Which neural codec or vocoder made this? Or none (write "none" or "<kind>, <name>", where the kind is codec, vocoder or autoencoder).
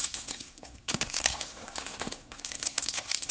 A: codec, SNAC